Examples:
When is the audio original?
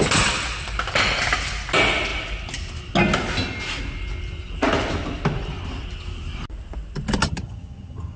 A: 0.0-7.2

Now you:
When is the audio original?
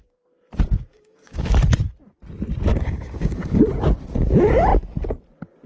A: 0.0-0.9; 1.5-2.7; 3.6-5.7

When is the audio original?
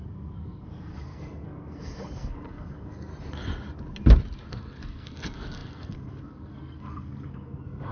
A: 3.1-4.5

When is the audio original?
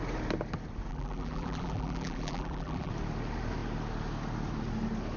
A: 0.0-0.9; 2.9-5.2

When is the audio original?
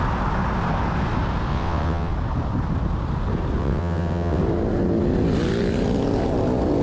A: 0.0-1.5; 2.1-3.6; 4.4-6.8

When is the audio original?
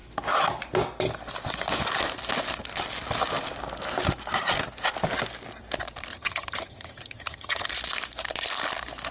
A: 0.0-6.1; 7.7-9.1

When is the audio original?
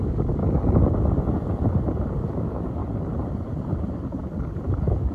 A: 0.4-2.1; 2.8-4.2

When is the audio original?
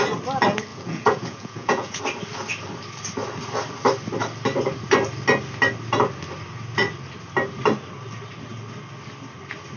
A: 0.0-0.7; 2.0-9.8